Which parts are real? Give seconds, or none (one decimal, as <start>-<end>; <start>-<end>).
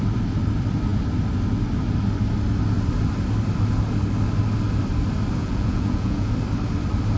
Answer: 0.0-5.4; 6.3-7.2